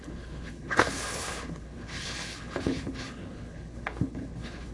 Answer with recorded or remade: remade